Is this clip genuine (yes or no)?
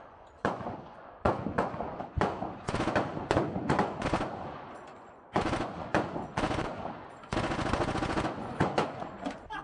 no